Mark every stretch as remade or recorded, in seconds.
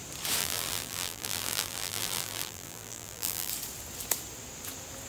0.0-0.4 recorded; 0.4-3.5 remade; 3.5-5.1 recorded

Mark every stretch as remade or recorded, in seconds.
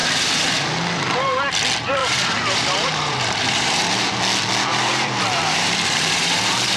0.0-1.5 remade; 1.5-2.0 recorded; 2.0-4.2 remade; 4.2-4.7 recorded; 4.7-6.8 remade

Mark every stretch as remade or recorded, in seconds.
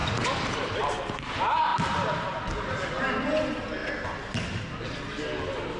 0.0-0.8 remade; 0.8-1.7 recorded; 1.7-3.0 remade; 3.0-5.8 recorded